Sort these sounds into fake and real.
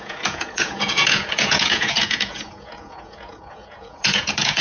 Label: fake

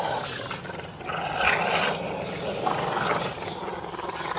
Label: real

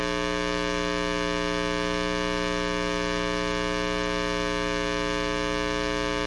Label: real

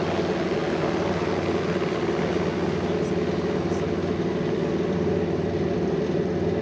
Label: real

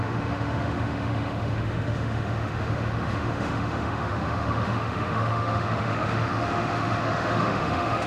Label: fake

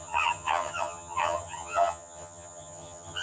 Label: fake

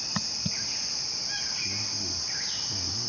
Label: real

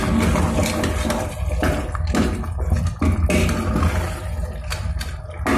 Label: real